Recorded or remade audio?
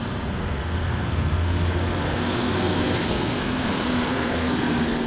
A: remade